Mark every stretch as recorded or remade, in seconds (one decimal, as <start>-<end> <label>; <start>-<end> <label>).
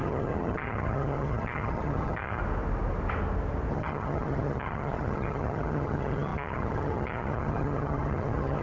0.0-2.4 remade; 2.4-3.7 recorded; 3.7-8.6 remade